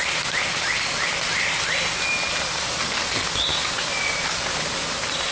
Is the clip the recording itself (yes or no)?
yes